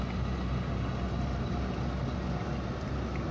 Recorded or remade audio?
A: recorded